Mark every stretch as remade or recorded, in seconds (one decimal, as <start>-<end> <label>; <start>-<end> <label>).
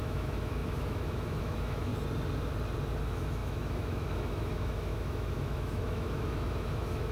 0.0-1.9 remade; 1.9-3.0 recorded; 3.0-7.1 remade